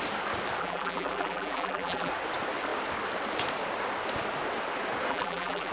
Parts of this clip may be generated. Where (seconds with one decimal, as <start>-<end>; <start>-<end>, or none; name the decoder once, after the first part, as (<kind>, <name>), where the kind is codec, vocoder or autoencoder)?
0.6-2.1 (vocoder, BigVGAN v2); 5.1-5.7